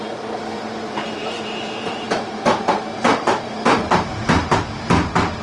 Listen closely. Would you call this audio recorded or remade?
remade